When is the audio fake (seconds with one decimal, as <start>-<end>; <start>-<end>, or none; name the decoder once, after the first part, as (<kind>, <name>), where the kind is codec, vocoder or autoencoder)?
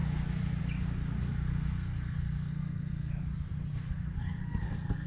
1.5-3.1 (codec, SNAC); 3.7-5.1